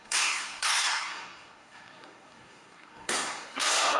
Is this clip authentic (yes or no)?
no